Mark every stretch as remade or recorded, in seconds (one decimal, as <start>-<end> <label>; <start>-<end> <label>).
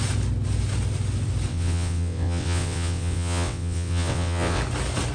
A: 0.0-1.5 recorded; 1.5-4.6 remade; 4.6-5.1 recorded